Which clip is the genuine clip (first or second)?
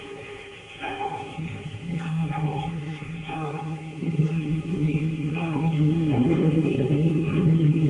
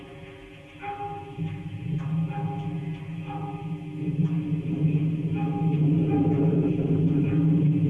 second